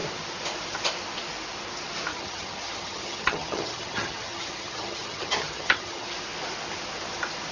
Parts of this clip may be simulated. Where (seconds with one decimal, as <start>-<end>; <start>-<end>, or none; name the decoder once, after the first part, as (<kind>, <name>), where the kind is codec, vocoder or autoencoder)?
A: 2.1-6.1 (vocoder, HiFi-GAN)